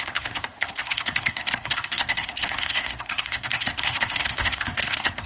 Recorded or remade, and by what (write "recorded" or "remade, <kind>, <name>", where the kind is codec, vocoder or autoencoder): remade, codec, SNAC